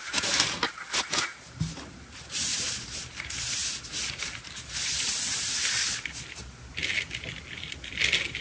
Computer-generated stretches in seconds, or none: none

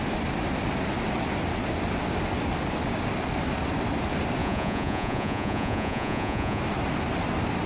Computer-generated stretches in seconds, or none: 4.4-6.6 (vocoder, Vocos)

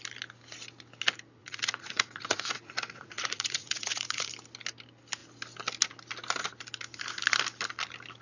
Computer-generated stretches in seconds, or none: 1.4-4.3 (vocoder, Vocos)

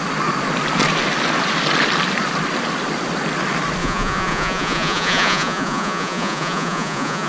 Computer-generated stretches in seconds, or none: 3.8-7.3 (vocoder, Vocos)

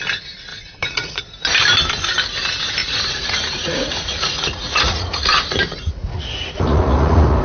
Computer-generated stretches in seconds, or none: 0.5-1.2 (vocoder, Vocos); 2.8-7.4

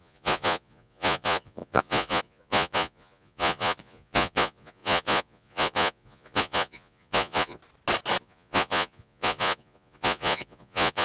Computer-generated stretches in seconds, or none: 0.0-7.6 (vocoder, Vocos); 8.2-11.0

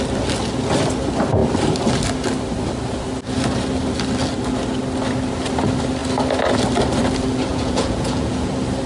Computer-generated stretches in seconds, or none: 7.5-8.5 (vocoder, Vocos)

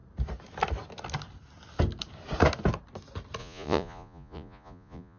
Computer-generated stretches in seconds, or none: 3.4-5.2 (vocoder, Vocos)